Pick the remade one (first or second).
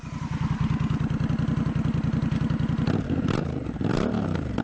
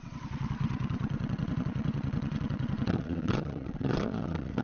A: second